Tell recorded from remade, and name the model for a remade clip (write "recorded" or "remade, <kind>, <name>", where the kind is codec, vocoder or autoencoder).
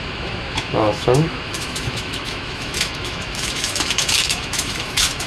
remade, autoencoder, DAC-VAE